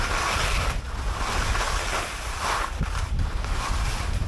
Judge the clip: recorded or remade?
recorded